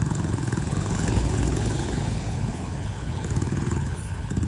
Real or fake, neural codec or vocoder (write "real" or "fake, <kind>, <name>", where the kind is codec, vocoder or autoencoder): fake, codec, HILCodec